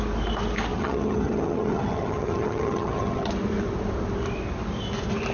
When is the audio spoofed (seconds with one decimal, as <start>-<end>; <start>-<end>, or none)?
0.7-3.3